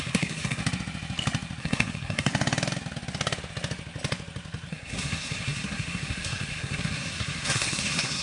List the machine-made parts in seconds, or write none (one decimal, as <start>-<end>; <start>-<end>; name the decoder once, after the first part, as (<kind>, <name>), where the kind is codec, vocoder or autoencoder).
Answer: 0.0-0.6 (codec, SNAC); 1.6-2.3; 4.7-8.2